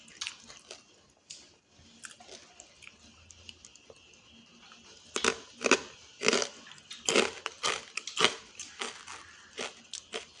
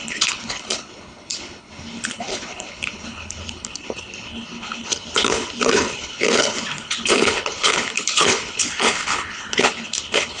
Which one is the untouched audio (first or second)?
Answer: first